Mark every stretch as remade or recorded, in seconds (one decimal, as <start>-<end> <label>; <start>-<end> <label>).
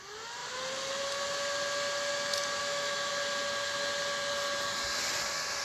0.0-2.6 recorded; 2.6-3.1 remade; 3.1-5.6 recorded